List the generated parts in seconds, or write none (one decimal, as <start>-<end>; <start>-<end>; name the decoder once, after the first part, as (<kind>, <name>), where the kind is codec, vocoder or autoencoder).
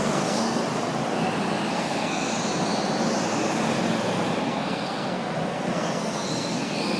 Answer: 0.0-0.6 (codec, SNAC); 1.7-2.3; 4.4-7.0